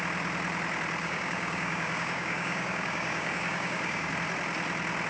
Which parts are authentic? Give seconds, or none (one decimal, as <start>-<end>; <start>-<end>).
0.0-1.0; 4.1-5.1